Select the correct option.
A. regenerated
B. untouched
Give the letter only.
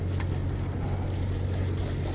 B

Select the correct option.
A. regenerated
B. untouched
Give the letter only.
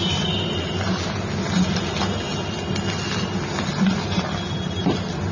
B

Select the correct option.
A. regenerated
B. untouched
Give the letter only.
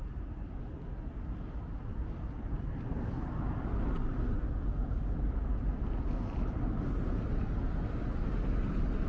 B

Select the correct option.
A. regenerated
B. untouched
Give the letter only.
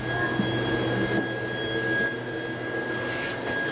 B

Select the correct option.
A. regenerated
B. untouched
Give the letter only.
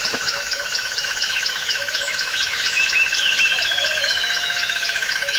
A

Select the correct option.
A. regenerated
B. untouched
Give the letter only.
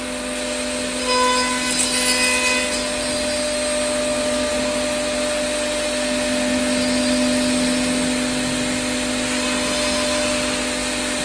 B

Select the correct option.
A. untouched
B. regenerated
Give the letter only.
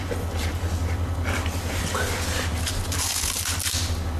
A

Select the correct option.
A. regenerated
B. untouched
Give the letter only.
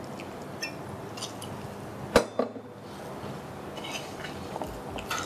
B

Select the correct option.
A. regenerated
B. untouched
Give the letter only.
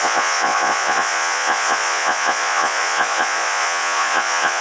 A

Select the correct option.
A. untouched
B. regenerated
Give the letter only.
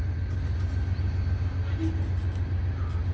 A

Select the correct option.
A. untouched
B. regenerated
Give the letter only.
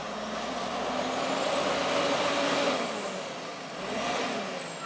A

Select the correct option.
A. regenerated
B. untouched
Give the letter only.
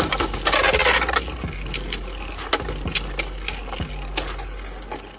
B